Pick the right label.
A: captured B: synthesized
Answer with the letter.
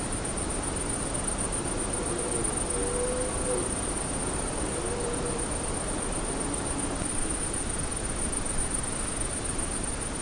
A